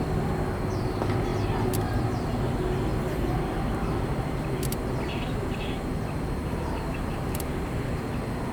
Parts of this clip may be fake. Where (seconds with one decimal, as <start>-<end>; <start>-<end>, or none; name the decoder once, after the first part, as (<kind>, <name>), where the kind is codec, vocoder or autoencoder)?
6.4-7.9 (vocoder, BigVGAN v2)